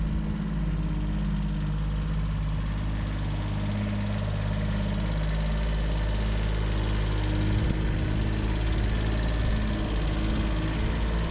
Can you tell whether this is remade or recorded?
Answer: recorded